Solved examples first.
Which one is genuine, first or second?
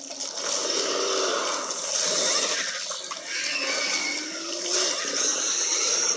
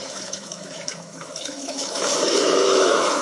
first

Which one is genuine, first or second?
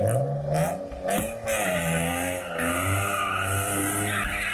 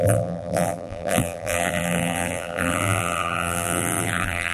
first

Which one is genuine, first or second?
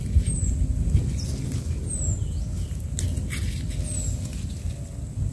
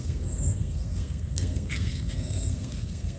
first